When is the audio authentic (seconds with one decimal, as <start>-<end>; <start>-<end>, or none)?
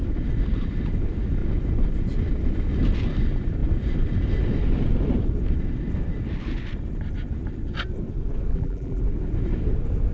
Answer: 0.0-8.5; 9.0-10.1